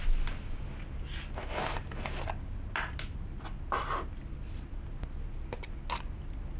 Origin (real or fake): real